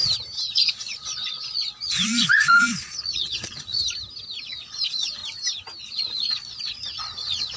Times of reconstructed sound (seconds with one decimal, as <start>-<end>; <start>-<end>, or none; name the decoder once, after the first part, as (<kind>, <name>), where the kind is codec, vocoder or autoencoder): 0.5-3.8 (vocoder, Vocos); 4.4-5.2; 5.8-7.6